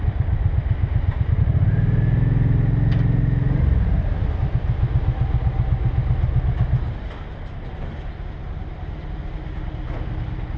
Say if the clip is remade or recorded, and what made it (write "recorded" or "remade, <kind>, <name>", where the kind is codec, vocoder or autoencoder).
recorded